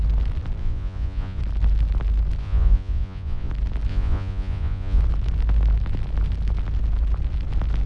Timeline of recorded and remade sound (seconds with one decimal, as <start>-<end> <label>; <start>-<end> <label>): 0.0-0.6 recorded; 0.6-1.4 remade; 1.4-2.4 recorded; 2.4-3.5 remade; 3.5-3.9 recorded; 3.9-5.0 remade; 5.0-7.9 recorded